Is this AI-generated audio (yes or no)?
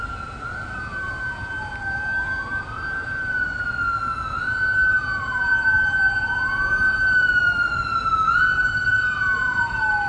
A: no